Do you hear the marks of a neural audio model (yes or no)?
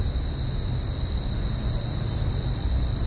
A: no